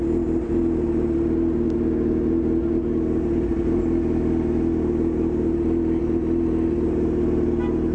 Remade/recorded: recorded